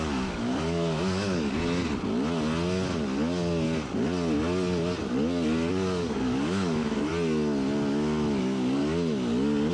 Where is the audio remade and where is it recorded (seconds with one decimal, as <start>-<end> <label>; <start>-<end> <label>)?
0.0-1.6 remade; 1.6-5.7 recorded; 5.7-7.1 remade; 7.1-8.4 recorded; 8.4-8.8 remade; 8.8-9.7 recorded